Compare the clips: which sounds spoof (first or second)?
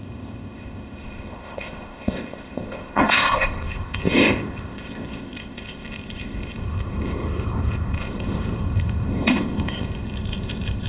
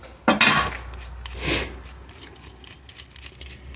first